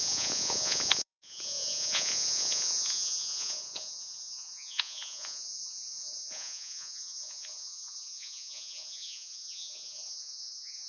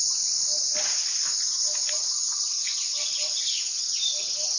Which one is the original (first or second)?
second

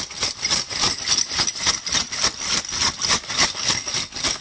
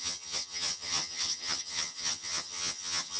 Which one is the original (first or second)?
first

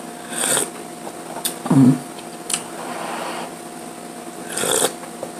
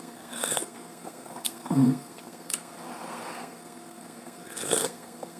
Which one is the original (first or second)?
first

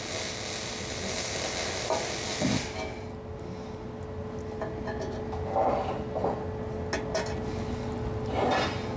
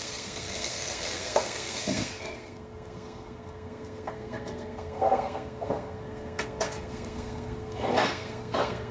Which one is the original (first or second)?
first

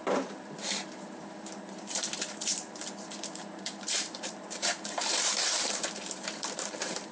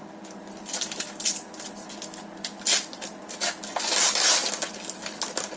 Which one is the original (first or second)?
second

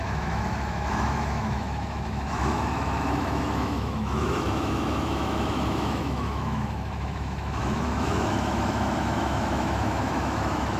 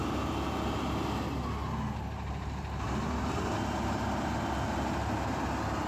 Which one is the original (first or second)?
second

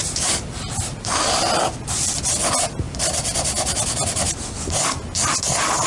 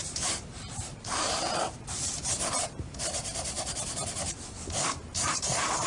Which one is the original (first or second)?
first